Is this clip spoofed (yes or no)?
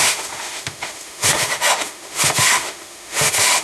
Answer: yes